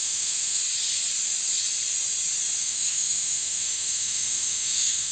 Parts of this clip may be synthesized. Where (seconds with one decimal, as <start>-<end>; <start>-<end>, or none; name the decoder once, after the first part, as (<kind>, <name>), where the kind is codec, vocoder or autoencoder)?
0.0-0.6 (autoencoder, DAC-VAE); 2.6-5.1